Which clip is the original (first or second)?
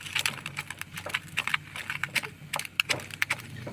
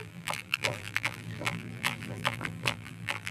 first